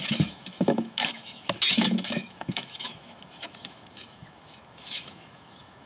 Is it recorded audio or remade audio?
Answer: remade